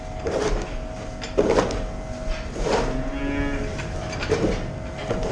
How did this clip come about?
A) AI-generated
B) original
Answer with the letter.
B